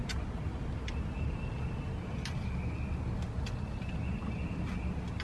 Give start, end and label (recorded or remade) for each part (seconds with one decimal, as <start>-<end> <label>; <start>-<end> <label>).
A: 0.0-5.2 recorded